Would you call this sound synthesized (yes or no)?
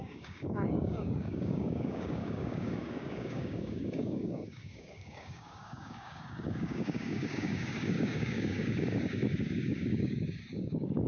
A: yes